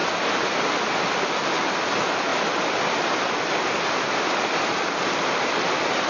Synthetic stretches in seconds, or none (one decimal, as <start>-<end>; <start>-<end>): 2.3-6.1